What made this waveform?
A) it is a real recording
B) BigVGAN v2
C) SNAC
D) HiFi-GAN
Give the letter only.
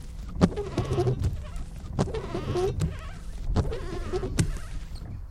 A